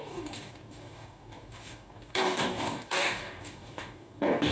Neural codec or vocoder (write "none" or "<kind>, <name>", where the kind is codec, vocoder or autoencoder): codec, DAC